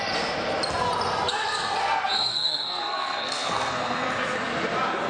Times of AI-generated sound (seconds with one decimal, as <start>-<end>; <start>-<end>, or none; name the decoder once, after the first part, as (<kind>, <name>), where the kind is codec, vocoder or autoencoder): 1.8-4.1 (codec, SNAC)